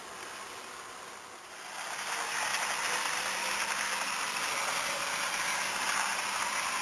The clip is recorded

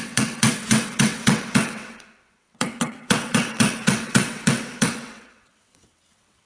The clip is remade